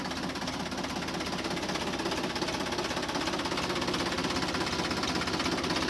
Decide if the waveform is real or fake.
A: real